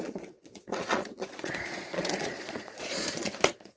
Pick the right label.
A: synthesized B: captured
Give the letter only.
A